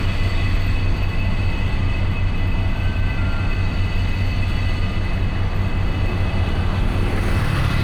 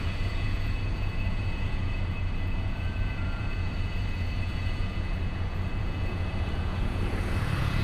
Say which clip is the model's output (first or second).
second